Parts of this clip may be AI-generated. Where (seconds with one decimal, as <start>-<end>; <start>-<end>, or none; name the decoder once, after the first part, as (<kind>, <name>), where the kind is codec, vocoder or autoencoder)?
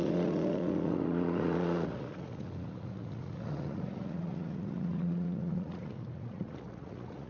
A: 0.0-7.3 (vocoder, Vocos)